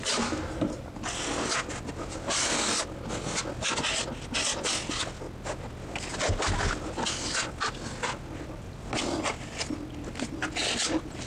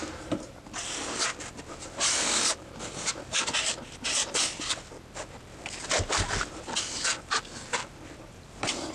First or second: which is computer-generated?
second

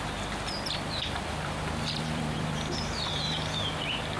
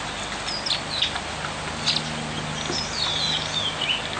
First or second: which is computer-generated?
first